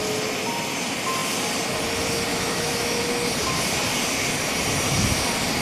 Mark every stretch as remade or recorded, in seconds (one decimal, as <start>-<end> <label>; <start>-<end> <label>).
0.0-2.3 recorded; 2.3-3.0 remade; 3.0-5.6 recorded